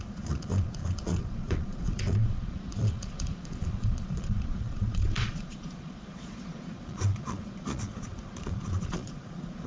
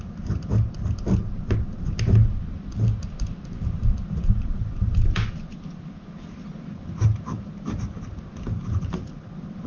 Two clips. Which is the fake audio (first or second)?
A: first